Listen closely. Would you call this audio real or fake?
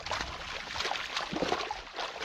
real